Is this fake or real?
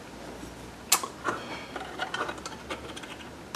real